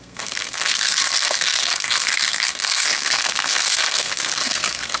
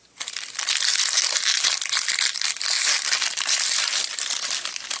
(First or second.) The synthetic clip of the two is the first